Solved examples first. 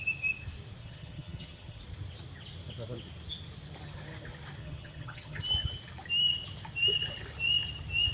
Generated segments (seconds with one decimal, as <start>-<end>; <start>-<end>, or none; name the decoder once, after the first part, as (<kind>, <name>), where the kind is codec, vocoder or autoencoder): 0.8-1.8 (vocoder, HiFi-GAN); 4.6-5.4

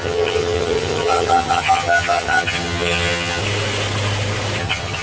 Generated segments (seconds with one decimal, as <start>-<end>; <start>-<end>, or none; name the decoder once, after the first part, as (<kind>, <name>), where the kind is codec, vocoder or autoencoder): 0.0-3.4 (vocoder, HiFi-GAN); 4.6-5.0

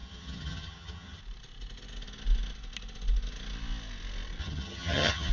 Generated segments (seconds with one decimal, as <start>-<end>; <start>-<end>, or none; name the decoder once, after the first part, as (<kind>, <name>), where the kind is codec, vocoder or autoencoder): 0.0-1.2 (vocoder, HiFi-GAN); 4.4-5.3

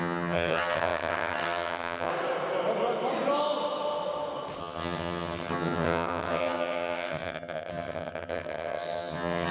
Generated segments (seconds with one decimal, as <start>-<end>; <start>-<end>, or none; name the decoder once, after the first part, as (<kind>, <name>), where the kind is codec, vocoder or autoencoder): 0.0-2.1 (vocoder, HiFi-GAN); 4.6-9.5

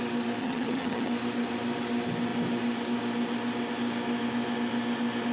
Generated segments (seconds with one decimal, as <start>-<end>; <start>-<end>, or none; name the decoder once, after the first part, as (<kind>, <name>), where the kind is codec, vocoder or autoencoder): 0.4-1.1 (vocoder, HiFi-GAN)

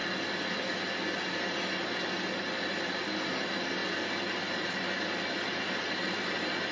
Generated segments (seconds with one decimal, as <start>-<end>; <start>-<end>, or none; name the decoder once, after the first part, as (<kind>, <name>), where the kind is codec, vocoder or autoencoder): none

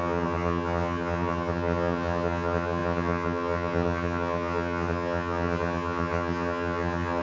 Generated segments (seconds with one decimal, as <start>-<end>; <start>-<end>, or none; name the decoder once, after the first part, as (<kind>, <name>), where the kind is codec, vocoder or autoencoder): 0.0-7.2 (vocoder, HiFi-GAN)

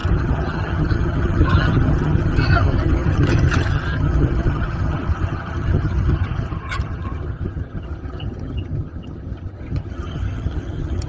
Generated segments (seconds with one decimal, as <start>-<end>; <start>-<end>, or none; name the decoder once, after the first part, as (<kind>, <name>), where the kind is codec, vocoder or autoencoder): 0.0-11.1 (vocoder, HiFi-GAN)